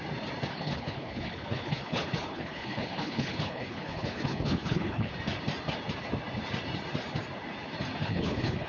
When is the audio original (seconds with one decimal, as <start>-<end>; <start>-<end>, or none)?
0.0-0.5; 5.1-8.0